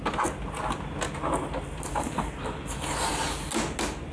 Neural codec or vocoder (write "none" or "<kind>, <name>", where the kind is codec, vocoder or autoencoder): none